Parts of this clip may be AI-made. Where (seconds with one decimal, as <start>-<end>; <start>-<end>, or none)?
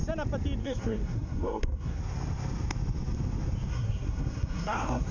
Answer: 0.6-2.0; 3.7-5.1